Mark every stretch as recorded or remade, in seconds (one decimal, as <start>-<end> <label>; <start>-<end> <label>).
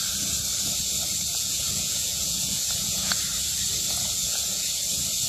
0.0-1.3 recorded; 1.3-3.2 remade; 3.2-4.2 recorded; 4.2-4.7 remade; 4.7-5.3 recorded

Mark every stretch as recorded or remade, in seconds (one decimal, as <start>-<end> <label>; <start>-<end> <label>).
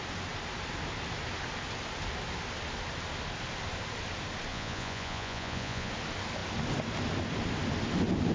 0.0-4.5 recorded; 4.5-5.9 remade; 5.9-8.3 recorded